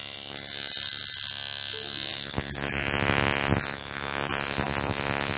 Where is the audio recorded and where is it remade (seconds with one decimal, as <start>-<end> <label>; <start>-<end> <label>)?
0.0-2.1 recorded; 2.1-5.4 remade